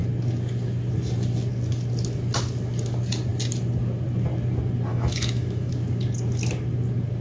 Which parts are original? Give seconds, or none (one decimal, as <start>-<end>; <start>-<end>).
0.0-4.9; 5.7-7.2